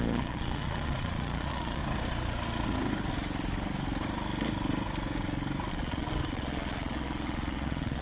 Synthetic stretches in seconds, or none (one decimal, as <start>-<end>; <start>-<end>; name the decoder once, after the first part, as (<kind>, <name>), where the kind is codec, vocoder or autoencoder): 0.0-1.8 (vocoder, Vocos); 5.7-8.0